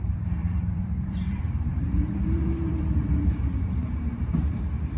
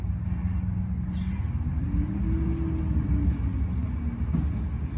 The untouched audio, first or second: second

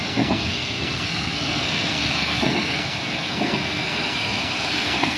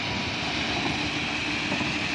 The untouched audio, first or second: second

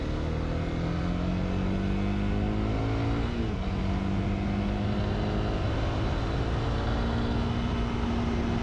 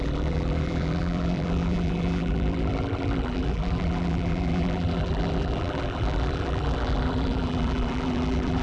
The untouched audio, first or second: first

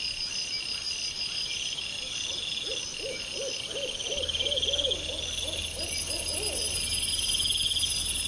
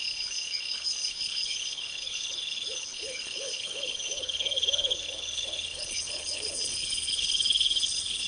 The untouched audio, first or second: first